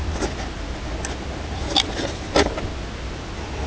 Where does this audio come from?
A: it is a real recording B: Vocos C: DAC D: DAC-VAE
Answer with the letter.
A